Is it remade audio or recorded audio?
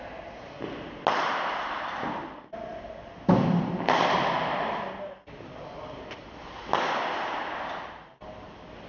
recorded